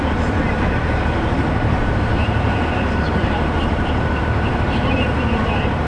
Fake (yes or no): yes